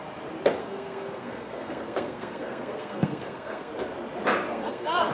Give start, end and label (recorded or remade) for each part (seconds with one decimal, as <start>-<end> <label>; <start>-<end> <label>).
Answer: 0.0-0.6 recorded; 0.6-3.7 remade; 3.7-4.5 recorded; 4.5-5.1 remade